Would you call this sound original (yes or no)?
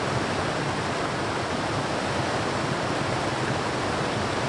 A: yes